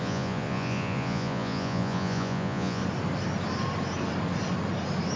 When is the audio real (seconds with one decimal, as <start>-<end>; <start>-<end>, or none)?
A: 2.8-5.2